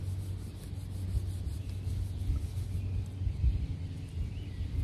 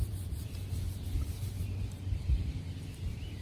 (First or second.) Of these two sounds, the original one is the first